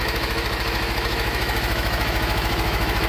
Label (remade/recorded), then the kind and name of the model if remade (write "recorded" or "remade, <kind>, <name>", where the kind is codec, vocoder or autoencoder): remade, autoencoder, DAC-VAE